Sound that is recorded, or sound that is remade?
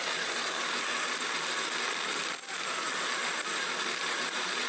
recorded